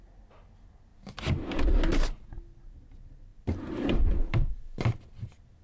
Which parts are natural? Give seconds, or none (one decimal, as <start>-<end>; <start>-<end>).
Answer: 0.0-3.3; 4.5-5.6